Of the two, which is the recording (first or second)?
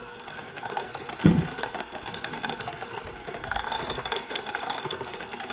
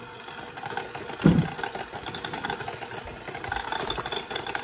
second